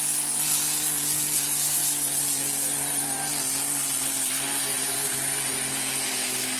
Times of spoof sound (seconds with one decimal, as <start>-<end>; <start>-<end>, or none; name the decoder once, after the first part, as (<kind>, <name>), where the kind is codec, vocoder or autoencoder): 4.7-5.5 (vocoder, BigVGAN v2)